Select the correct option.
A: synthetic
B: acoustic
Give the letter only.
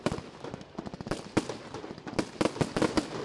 B